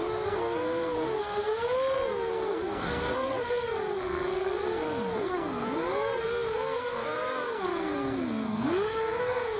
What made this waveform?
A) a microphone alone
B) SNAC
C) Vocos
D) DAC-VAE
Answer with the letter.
B